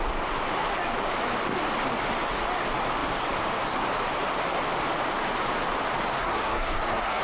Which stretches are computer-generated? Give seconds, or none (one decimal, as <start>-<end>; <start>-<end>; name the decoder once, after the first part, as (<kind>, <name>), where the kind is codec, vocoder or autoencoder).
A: 6.2-7.2 (codec, SNAC)